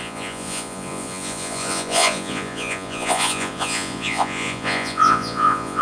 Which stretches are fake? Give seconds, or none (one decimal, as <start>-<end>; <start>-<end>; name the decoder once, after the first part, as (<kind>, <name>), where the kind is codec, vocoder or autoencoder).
0.0-5.8 (vocoder, Vocos)